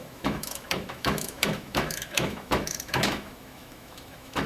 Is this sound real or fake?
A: fake